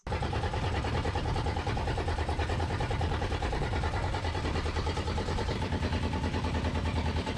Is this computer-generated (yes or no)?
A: yes